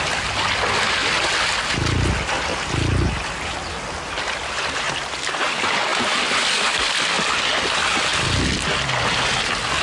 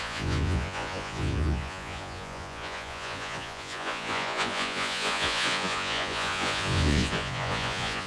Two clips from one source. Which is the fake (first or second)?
second